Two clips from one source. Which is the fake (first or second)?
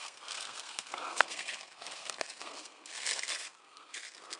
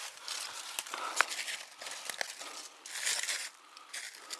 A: first